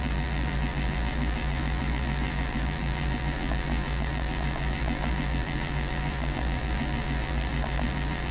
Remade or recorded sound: remade